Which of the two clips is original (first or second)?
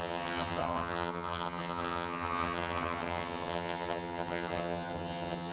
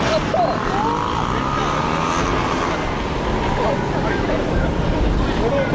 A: second